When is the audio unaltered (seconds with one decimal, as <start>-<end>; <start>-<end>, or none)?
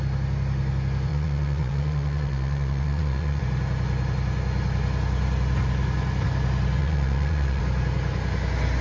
0.0-1.1; 3.4-6.8; 7.6-8.8